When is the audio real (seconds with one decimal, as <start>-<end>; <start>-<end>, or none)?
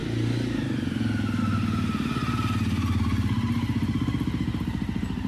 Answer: 0.0-5.3